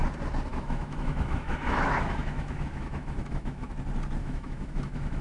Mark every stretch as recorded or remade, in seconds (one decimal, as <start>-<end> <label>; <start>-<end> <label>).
0.0-0.5 recorded; 0.5-3.6 remade; 3.6-4.2 recorded; 4.2-5.2 remade